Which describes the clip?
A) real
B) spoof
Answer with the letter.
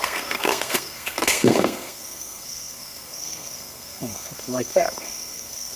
B